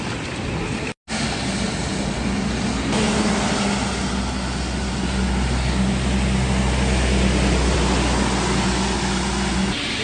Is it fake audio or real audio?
real